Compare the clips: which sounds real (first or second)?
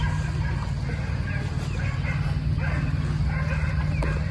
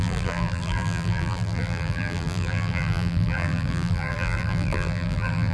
first